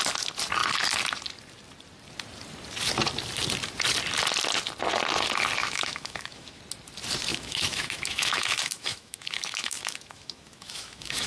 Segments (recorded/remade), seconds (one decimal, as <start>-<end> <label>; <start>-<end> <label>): 0.0-5.6 recorded; 5.6-6.6 remade; 6.6-7.3 recorded; 7.3-11.3 remade

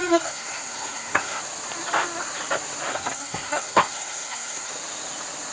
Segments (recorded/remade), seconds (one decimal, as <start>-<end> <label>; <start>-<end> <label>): 0.0-1.4 remade; 1.4-2.9 recorded; 2.9-4.7 remade; 4.7-5.5 recorded

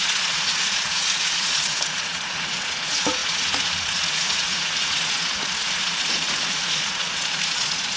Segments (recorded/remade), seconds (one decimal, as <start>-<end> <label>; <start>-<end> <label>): 0.0-8.0 remade

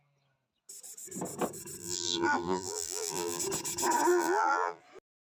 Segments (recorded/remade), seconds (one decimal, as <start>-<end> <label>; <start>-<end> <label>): 0.0-1.8 recorded; 1.8-3.4 remade; 3.4-4.1 recorded; 4.1-4.8 remade; 4.8-5.2 recorded

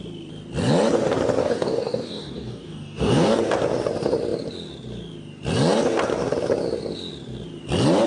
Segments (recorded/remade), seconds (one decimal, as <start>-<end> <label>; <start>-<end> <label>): 0.0-1.4 recorded; 1.4-3.4 remade; 3.4-8.1 recorded

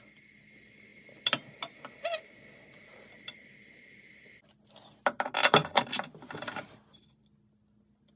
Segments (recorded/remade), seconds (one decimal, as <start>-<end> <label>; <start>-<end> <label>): 0.0-5.6 recorded; 5.6-7.2 remade; 7.2-8.2 recorded